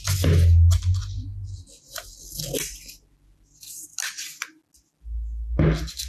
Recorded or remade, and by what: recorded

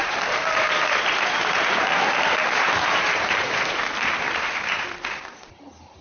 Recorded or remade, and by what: remade, vocoder, BigVGAN v2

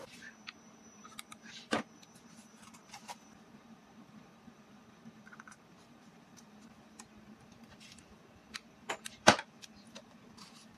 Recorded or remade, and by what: remade, vocoder, BigVGAN v2